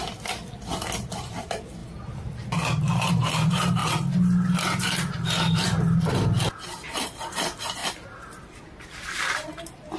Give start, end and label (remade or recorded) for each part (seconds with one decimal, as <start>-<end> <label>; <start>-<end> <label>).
0.0-10.0 recorded

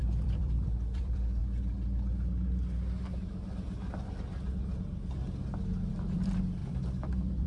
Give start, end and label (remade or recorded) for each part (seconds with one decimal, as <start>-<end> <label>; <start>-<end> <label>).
0.0-1.4 remade; 1.4-5.9 recorded; 5.9-7.5 remade